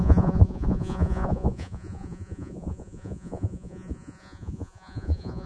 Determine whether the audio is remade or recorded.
remade